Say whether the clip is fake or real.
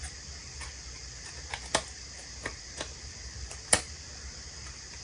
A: real